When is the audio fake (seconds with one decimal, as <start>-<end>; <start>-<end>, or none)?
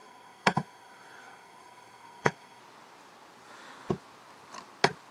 0.0-2.6